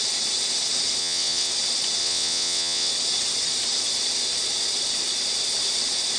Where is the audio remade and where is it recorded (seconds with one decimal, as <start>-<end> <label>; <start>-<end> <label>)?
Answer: 0.0-1.0 recorded; 1.0-1.5 remade; 1.5-2.0 recorded; 2.0-2.9 remade; 2.9-6.2 recorded